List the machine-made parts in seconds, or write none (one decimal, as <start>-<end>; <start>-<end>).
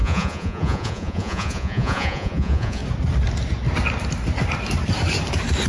0.0-2.8